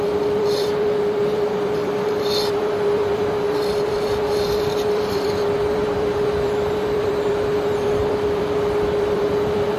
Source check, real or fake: fake